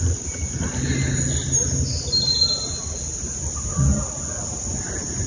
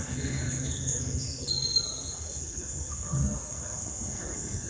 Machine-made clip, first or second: second